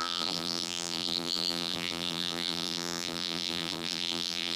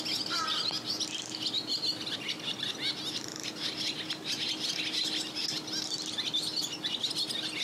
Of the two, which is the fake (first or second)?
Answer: first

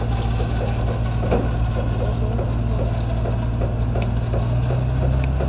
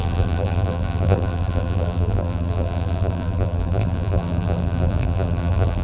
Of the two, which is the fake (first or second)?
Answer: second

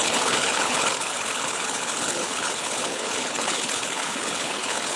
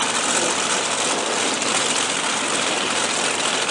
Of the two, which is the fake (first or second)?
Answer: first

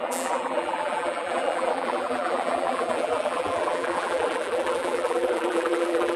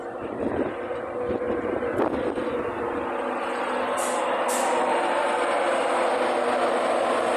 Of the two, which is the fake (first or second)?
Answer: first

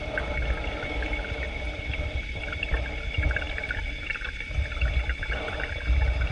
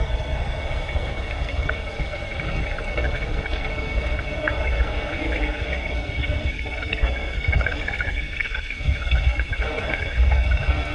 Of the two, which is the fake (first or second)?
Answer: second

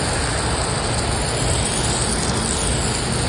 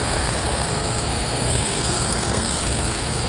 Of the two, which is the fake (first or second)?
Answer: second